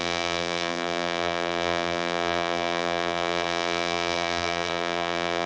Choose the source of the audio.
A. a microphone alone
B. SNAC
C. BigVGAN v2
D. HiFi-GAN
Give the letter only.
C